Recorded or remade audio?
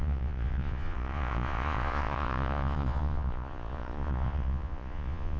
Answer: remade